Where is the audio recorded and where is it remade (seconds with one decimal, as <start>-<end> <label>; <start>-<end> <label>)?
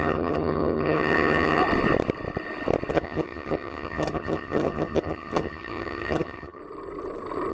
0.0-1.6 remade; 1.6-2.9 recorded; 2.9-6.6 remade; 6.6-7.5 recorded